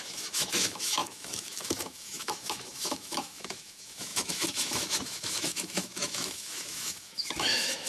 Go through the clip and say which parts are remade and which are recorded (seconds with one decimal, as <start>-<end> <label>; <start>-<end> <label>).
0.0-7.9 remade